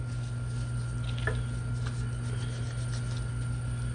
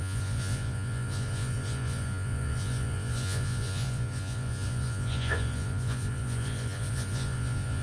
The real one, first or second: first